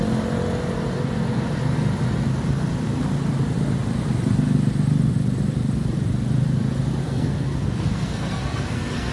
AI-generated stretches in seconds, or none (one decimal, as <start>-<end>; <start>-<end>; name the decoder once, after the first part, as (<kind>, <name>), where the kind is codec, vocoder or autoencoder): 7.0-9.1 (codec, SNAC)